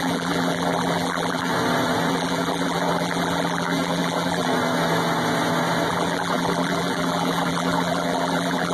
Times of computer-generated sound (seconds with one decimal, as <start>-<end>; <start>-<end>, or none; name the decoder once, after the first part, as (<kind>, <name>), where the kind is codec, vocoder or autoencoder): 0.0-1.5 (vocoder, BigVGAN v2); 2.1-4.5; 5.9-8.7